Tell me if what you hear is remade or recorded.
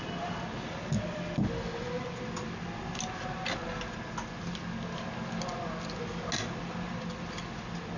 recorded